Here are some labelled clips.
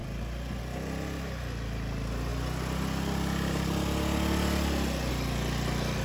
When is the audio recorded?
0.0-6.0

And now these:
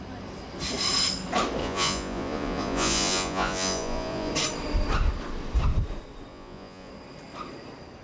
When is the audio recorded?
0.0-1.6; 4.3-6.3; 6.9-8.0

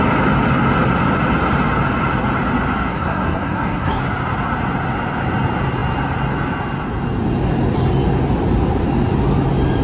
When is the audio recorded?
0.0-2.9; 4.0-9.8

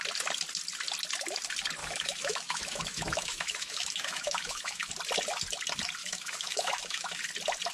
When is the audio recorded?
0.0-1.8; 4.9-6.0; 7.2-7.7

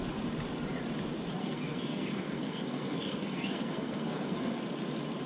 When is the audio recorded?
0.0-1.4; 4.6-5.3